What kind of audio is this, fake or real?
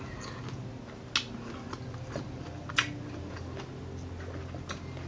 real